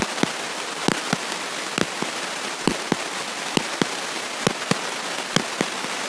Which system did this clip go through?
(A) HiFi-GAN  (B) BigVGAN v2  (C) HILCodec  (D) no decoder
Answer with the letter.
D